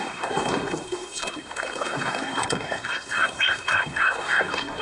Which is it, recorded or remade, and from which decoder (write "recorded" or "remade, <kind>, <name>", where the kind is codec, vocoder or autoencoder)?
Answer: remade, codec, SNAC